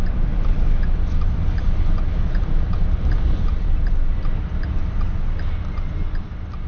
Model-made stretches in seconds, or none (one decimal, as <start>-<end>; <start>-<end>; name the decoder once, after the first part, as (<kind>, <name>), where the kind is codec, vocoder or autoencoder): none